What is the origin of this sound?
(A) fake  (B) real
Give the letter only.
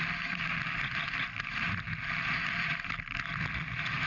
B